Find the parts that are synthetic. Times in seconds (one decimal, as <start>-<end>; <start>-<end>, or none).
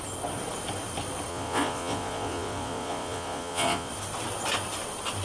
1.3-3.9